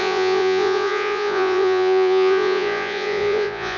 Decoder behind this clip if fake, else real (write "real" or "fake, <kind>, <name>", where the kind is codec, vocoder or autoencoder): fake, vocoder, Vocos